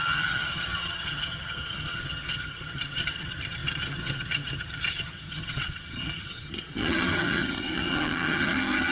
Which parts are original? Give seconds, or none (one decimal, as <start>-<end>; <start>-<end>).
none